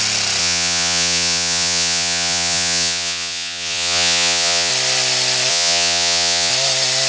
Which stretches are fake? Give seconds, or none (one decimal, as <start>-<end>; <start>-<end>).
0.4-4.7; 5.5-6.5